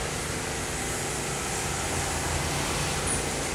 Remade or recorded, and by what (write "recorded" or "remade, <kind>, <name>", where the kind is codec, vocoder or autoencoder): recorded